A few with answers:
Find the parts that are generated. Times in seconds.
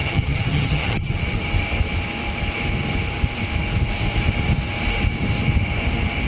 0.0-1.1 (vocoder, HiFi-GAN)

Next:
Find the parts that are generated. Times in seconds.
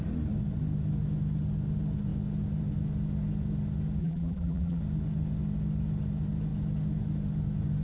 4.0-4.8 (vocoder, BigVGAN v2)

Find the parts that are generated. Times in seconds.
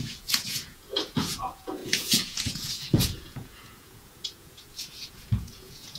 0.0-6.0 (vocoder, Vocos)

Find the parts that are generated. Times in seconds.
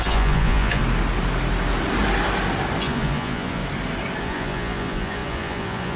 0.0-0.8 (vocoder, Vocos); 2.8-3.6; 4.2-6.0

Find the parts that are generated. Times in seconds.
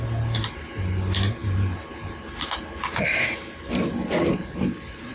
none